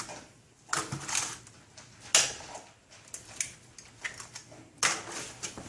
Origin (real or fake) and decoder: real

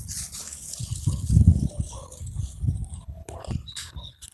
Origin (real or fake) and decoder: fake, codec, HILCodec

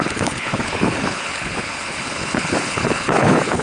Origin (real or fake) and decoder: fake, codec, HILCodec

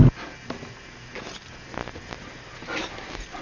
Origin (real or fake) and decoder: real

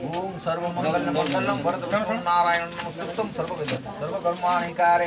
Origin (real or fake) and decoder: real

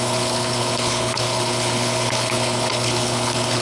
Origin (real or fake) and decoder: fake, codec, HILCodec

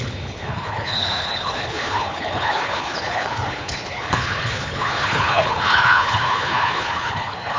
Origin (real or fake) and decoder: fake, codec, HILCodec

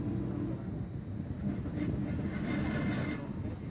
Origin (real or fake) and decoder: real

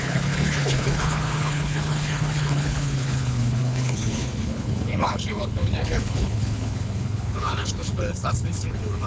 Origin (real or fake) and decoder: fake, codec, HILCodec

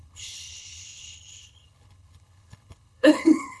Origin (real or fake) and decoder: fake, codec, HILCodec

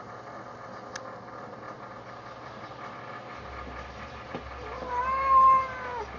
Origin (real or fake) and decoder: real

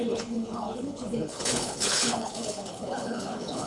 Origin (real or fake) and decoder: fake, codec, HILCodec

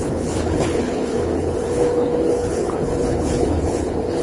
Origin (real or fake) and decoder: fake, codec, HILCodec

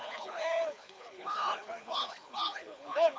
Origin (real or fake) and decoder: fake, codec, HILCodec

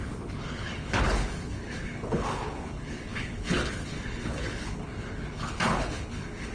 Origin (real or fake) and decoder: fake, codec, HILCodec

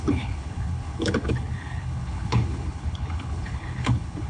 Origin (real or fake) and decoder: fake, codec, HILCodec